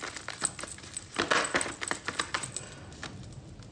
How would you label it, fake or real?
real